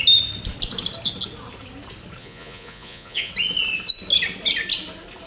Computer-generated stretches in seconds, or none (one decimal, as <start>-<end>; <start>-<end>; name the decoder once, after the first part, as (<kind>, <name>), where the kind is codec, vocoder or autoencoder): 2.2-3.3 (vocoder, Vocos)